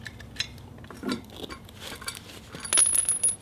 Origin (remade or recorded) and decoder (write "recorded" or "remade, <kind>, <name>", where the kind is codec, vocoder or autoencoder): recorded